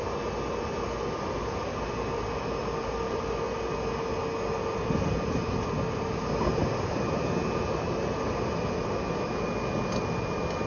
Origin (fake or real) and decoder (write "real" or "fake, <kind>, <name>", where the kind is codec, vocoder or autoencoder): real